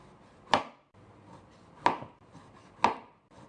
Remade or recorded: recorded